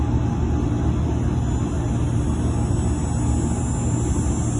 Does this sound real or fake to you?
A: real